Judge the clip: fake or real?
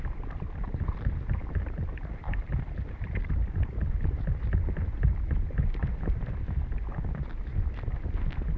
real